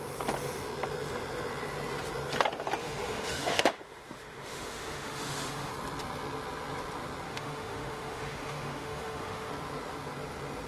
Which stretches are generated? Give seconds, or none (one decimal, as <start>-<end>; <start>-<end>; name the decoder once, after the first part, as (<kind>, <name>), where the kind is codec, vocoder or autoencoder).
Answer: 2.8-5.7 (autoencoder, DAC-VAE); 7.3-9.5